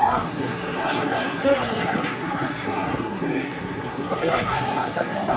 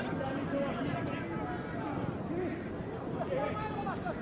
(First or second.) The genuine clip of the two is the second